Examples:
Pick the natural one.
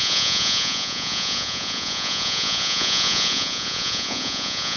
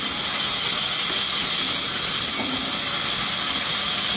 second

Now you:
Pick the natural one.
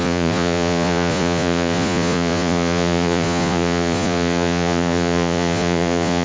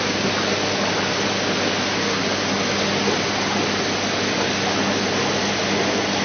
second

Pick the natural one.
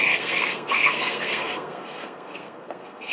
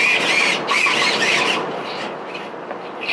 second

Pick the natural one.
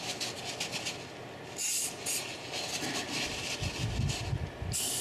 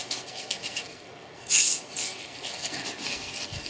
first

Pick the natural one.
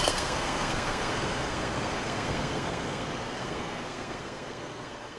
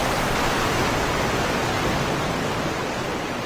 second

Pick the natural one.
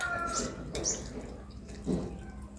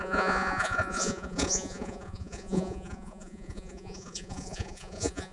first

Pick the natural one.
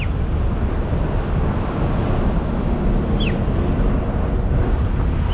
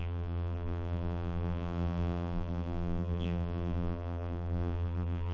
first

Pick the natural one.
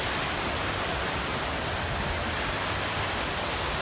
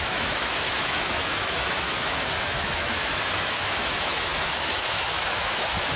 first